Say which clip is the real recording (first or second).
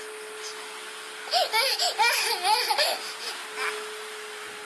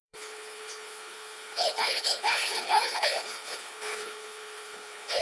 first